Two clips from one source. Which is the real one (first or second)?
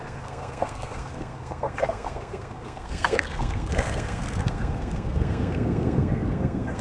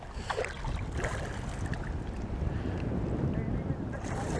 second